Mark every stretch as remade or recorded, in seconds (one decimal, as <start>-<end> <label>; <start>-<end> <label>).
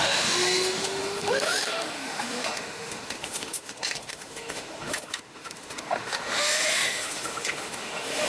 0.0-8.3 remade